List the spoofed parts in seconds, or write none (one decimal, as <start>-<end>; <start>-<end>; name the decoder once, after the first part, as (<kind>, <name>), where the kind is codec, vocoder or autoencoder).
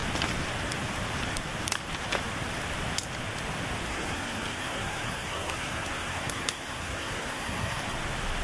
3.9-8.0 (codec, SNAC)